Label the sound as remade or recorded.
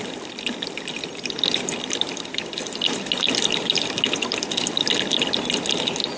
recorded